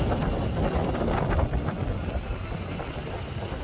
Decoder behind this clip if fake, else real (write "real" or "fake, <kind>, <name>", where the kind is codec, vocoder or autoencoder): real